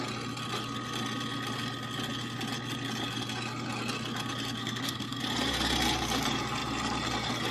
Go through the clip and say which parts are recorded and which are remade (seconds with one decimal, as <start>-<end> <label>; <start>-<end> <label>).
0.0-4.6 recorded; 4.6-5.2 remade; 5.2-7.5 recorded